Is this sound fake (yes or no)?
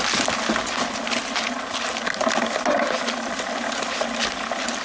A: no